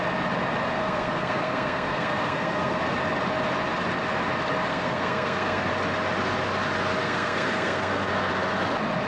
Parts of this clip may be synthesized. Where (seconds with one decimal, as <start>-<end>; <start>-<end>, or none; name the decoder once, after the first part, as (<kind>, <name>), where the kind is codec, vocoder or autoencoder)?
0.8-2.8 (codec, SNAC); 4.7-5.7; 7.0-8.3